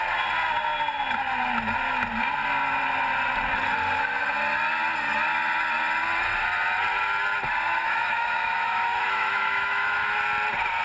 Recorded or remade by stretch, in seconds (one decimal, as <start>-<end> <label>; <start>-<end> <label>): 0.0-7.7 recorded; 7.7-10.2 remade; 10.2-10.8 recorded